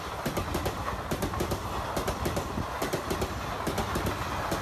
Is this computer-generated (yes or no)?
no